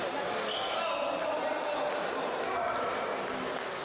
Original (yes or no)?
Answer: yes